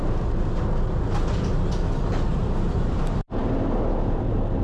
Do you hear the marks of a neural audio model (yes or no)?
no